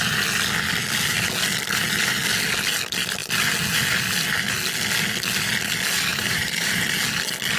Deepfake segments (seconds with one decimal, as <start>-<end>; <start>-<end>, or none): 6.1-6.8